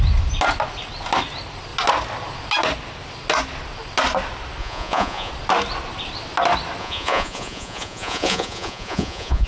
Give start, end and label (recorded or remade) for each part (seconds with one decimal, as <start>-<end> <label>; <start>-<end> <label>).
0.0-4.6 recorded; 4.6-5.3 remade; 5.3-6.8 recorded; 6.8-9.5 remade